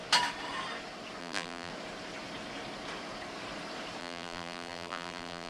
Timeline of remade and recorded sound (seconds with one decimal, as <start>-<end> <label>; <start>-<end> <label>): 0.0-1.2 recorded; 1.2-1.7 remade; 1.7-4.0 recorded; 4.0-5.5 remade

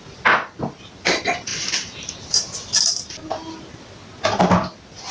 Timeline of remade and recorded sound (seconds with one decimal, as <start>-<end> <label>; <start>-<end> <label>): 0.0-5.1 recorded

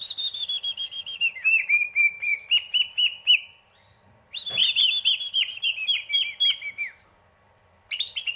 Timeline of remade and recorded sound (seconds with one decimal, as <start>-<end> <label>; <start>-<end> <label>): 0.0-8.4 recorded

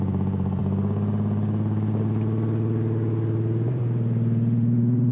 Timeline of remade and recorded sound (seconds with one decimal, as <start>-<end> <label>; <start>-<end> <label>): 0.0-0.6 remade; 0.6-3.7 recorded; 3.7-5.1 remade

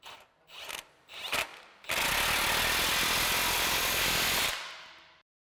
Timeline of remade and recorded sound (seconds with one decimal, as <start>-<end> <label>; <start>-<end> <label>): 0.0-5.4 recorded